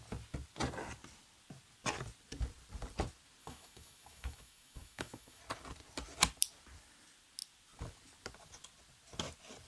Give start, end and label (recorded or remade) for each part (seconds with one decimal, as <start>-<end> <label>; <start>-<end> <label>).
0.0-3.4 recorded; 3.4-5.4 remade; 5.4-9.7 recorded